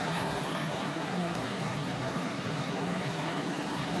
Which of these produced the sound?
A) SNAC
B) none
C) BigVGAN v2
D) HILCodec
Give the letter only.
A